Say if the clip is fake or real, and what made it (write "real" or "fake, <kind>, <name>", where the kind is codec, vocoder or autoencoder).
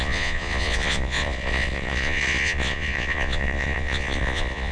fake, vocoder, Vocos